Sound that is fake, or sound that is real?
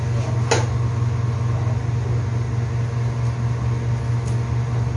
real